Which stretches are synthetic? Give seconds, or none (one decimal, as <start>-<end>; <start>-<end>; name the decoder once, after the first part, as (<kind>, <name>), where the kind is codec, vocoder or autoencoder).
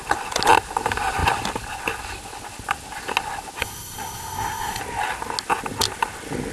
3.6-4.8 (codec, SNAC)